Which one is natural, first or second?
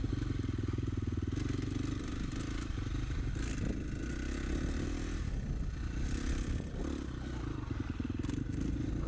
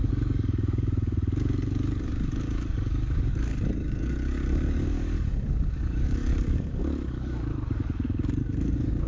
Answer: first